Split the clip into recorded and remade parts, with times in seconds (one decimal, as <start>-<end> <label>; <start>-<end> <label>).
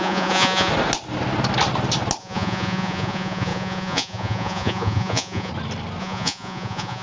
0.0-0.7 remade; 0.7-2.2 recorded; 2.2-5.5 remade; 5.5-6.0 recorded; 6.0-7.0 remade